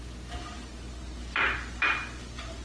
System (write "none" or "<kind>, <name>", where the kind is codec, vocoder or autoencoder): none